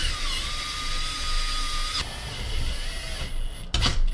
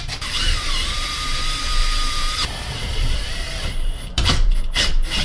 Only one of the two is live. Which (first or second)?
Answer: first